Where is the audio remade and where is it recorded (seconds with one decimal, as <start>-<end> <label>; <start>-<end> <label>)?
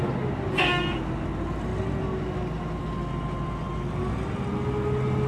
0.0-5.3 recorded